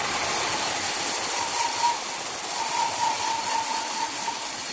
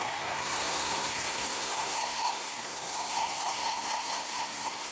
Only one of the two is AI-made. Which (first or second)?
second